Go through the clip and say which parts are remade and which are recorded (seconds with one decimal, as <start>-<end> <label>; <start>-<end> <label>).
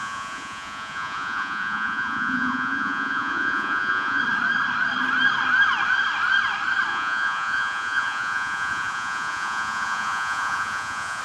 0.0-4.2 remade; 4.2-6.9 recorded; 6.9-11.2 remade